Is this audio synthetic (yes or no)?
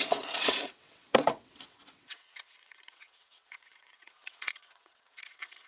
yes